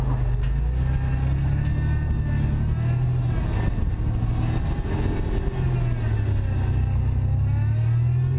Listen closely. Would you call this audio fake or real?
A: real